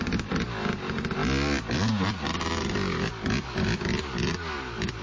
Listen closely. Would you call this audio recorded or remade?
recorded